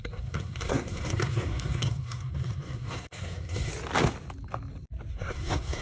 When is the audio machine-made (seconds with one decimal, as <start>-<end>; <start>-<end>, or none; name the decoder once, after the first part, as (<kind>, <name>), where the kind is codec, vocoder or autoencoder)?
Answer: 0.0-3.7 (codec, SNAC); 5.1-5.8